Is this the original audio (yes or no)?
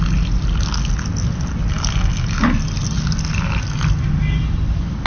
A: yes